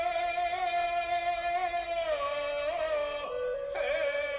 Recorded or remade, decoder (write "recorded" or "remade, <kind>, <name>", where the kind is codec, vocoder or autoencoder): recorded